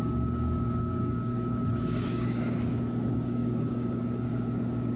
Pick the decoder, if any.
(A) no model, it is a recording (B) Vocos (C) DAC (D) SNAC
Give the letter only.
C